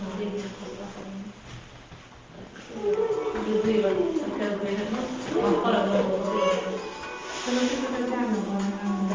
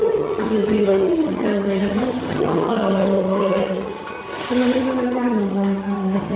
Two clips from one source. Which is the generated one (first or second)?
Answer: second